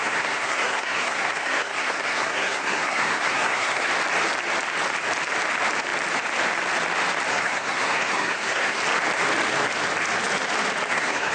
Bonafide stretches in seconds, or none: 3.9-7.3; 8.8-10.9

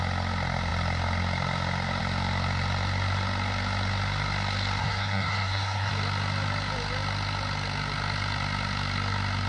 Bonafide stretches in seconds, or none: 0.0-4.8; 5.9-9.5

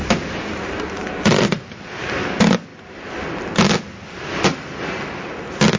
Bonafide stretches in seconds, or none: 0.0-5.8

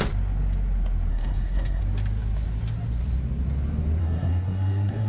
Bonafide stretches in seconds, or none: 0.0-1.1; 1.8-4.0

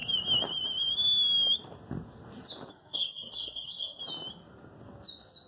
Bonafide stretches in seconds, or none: 0.0-2.7; 4.0-5.5